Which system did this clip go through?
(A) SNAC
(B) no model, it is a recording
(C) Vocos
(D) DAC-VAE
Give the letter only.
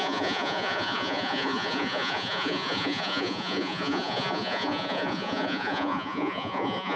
C